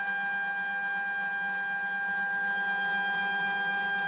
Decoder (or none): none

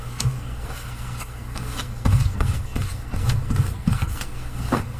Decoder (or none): codec, SNAC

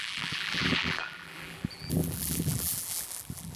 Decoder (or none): vocoder, BigVGAN v2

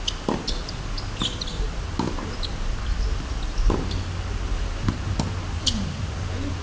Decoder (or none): none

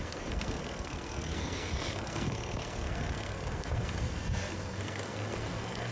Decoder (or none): codec, SNAC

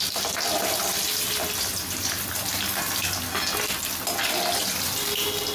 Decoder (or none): none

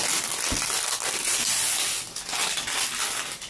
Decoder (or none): none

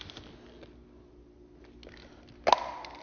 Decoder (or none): none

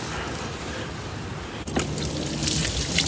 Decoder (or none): none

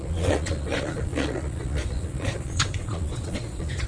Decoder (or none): vocoder, Vocos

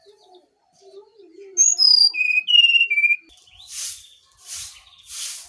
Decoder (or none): none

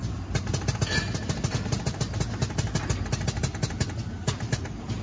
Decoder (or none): none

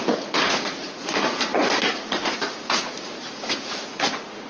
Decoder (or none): vocoder, Vocos